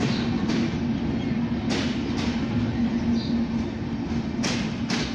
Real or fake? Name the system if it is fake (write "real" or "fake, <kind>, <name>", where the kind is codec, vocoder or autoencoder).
real